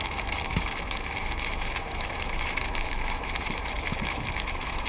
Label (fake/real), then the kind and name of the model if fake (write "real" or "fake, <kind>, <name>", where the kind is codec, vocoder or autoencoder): fake, autoencoder, DAC-VAE